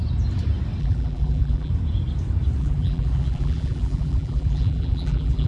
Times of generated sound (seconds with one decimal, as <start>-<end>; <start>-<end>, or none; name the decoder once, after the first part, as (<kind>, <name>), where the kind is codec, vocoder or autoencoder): 0.8-1.7 (vocoder, BigVGAN v2); 2.6-5.5